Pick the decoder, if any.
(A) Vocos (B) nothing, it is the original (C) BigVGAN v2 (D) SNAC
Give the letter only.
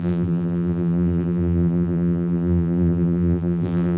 C